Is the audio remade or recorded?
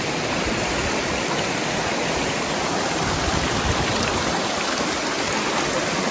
recorded